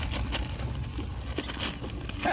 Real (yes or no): yes